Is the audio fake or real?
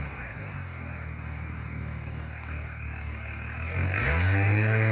fake